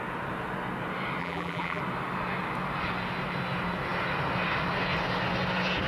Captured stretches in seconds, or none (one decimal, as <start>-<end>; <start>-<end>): 0.0-1.2; 1.8-5.9